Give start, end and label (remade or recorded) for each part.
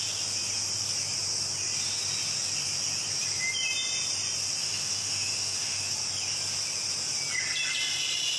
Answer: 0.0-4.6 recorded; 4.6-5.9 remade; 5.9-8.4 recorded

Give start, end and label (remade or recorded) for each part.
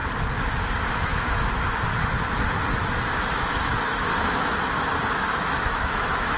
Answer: 0.0-0.9 recorded; 0.9-1.9 remade; 1.9-3.2 recorded; 3.2-4.1 remade; 4.1-5.1 recorded; 5.1-6.4 remade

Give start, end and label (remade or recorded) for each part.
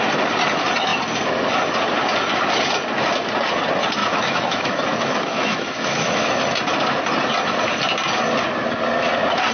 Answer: 0.0-4.0 recorded; 4.0-6.4 remade; 6.4-9.5 recorded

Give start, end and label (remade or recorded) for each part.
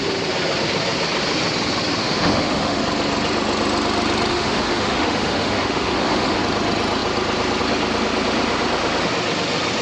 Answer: 0.0-2.0 recorded; 2.0-2.8 remade; 2.8-4.3 recorded; 4.3-6.4 remade; 6.4-9.8 recorded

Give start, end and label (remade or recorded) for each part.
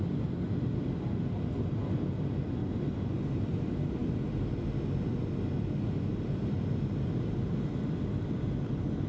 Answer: 0.0-9.1 recorded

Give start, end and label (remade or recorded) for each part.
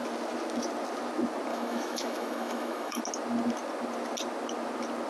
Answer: 0.0-1.5 recorded; 1.5-3.0 remade; 3.0-5.1 recorded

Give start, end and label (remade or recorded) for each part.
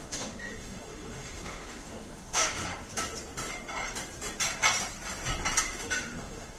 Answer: 0.0-2.6 remade; 2.6-5.6 recorded; 5.6-6.6 remade